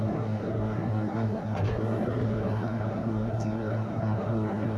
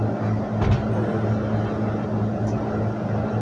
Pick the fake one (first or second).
first